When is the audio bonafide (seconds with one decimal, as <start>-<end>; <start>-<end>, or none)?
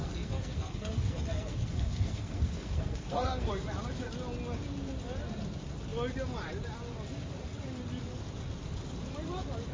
3.5-9.7